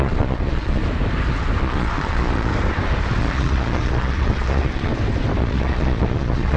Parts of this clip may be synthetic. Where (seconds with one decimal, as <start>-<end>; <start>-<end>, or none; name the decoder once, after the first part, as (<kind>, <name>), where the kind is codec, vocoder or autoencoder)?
0.0-0.8 (vocoder, Vocos); 1.6-2.5; 3.2-4.9; 5.4-6.6